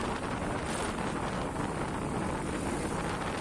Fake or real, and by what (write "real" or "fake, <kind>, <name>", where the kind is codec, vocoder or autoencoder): real